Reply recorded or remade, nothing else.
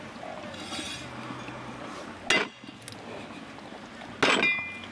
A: recorded